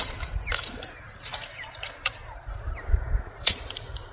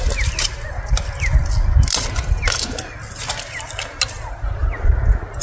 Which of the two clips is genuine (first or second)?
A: second